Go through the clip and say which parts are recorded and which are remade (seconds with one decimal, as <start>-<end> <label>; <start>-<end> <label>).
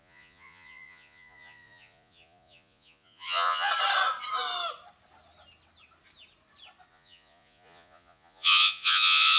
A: 0.0-3.7 remade; 3.7-6.9 recorded; 6.9-9.4 remade